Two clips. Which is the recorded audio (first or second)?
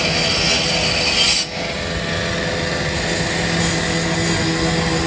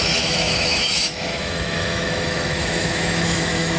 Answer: first